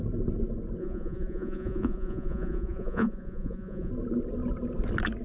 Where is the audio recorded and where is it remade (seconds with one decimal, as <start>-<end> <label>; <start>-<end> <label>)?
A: 0.0-0.8 recorded; 0.8-3.9 remade; 3.9-5.2 recorded